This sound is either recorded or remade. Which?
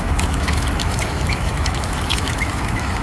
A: remade